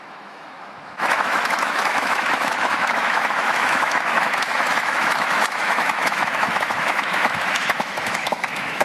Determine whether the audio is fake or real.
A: fake